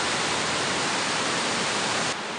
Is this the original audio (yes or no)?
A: yes